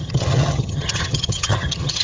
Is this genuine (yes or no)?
no